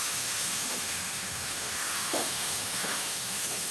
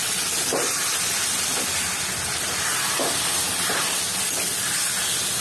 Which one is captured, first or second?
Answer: second